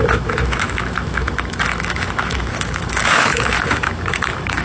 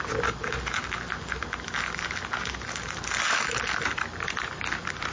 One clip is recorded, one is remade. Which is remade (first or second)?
first